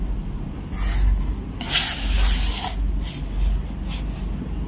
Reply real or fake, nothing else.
real